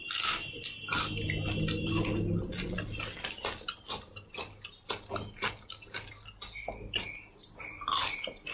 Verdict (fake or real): real